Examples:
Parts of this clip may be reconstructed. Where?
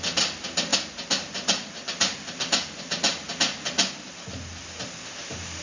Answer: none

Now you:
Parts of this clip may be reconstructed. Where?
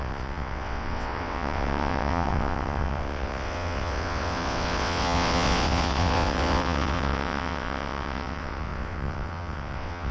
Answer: 0.0-10.1